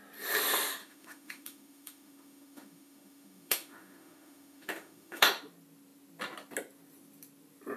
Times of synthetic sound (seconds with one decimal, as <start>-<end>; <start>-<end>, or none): 0.8-5.4